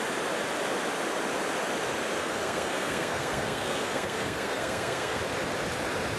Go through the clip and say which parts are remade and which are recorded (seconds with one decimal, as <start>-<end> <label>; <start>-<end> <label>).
0.0-2.2 recorded; 2.2-5.2 remade; 5.2-6.2 recorded

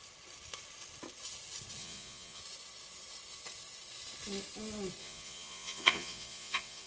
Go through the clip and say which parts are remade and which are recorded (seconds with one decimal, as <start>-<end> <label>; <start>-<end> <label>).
0.0-1.8 recorded; 1.8-2.4 remade; 2.4-5.0 recorded; 5.0-6.9 remade